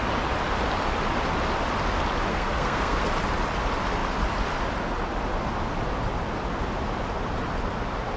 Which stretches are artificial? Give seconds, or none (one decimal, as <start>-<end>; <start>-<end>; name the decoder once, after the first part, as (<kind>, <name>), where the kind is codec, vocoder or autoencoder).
2.3-3.0 (codec, SNAC)